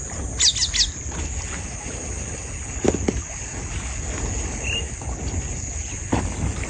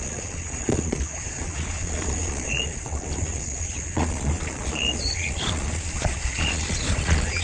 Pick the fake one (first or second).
second